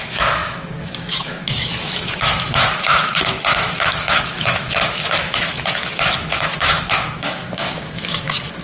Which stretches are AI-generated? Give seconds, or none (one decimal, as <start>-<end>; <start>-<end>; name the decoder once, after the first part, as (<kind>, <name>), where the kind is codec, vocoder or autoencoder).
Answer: 0.0-8.6 (autoencoder, DAC-VAE)